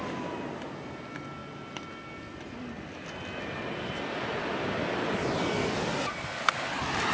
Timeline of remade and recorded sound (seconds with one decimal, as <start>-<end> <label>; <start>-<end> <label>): 0.0-7.1 recorded